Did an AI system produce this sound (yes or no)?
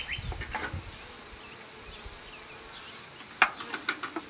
no